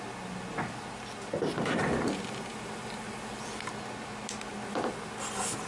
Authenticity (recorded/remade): recorded